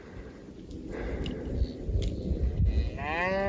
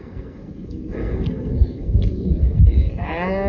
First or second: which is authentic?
first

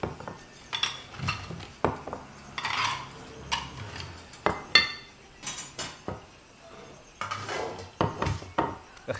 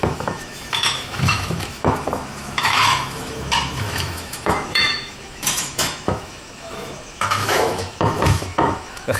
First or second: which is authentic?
first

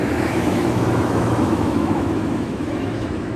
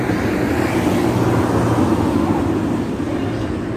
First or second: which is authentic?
second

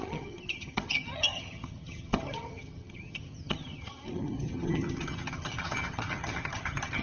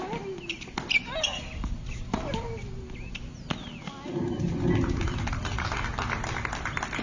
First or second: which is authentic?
second